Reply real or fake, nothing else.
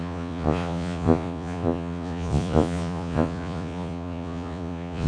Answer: fake